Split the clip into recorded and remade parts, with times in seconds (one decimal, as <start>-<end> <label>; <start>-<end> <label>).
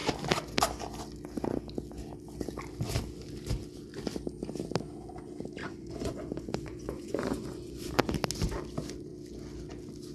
0.0-5.6 recorded; 5.6-8.1 remade; 8.1-10.1 recorded